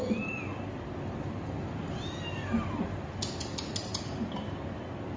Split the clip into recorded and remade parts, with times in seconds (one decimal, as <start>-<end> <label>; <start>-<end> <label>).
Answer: 0.0-5.2 recorded

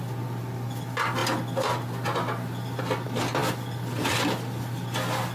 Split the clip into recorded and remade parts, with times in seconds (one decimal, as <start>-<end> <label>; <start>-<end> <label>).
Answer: 0.0-5.3 recorded